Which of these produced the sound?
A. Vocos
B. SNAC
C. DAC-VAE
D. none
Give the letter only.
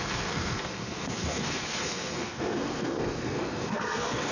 B